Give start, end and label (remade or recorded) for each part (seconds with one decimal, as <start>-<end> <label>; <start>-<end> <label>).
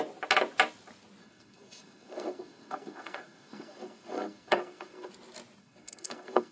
0.0-1.2 recorded; 1.2-5.1 remade; 5.1-5.6 recorded; 5.6-6.5 remade